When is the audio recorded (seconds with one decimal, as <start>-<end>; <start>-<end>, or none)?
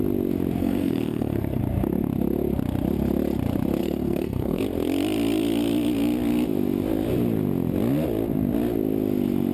0.0-0.6; 1.6-3.8; 4.6-9.5